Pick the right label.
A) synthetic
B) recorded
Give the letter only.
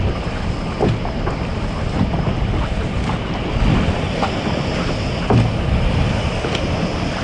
B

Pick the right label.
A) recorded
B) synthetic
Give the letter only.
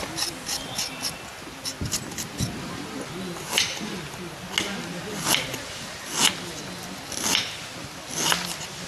A